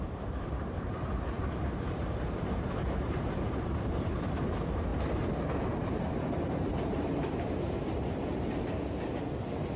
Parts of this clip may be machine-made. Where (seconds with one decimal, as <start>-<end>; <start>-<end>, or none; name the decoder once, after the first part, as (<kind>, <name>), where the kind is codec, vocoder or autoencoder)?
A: 0.0-4.9 (vocoder, BigVGAN v2); 5.6-9.8